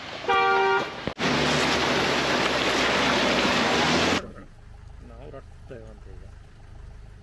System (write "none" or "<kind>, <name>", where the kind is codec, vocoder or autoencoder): none